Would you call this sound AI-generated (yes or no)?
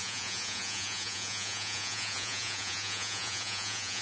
yes